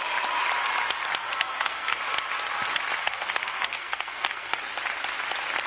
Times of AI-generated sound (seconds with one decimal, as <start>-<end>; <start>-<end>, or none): 1.2-2.0; 3.0-4.6

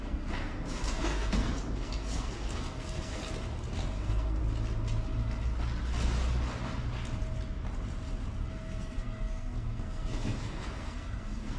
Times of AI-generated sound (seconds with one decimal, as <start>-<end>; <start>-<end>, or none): 0.0-3.2; 3.9-4.4; 8.5-11.6